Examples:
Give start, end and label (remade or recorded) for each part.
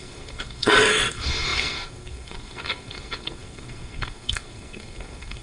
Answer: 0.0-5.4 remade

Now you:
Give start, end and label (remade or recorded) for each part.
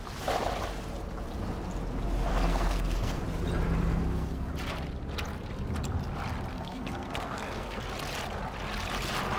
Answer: 0.0-2.3 recorded; 2.3-3.2 remade; 3.2-3.9 recorded; 3.9-4.5 remade; 4.5-6.5 recorded; 6.5-7.8 remade; 7.8-9.4 recorded